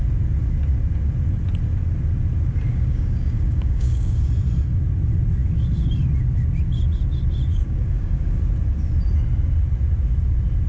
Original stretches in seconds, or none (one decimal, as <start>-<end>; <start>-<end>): 0.0-2.7; 4.3-7.5; 8.4-10.7